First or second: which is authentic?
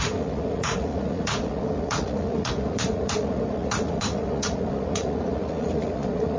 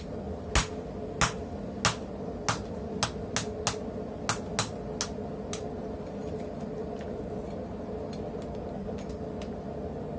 second